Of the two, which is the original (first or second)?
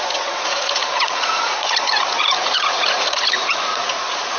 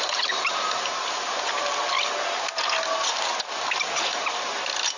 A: second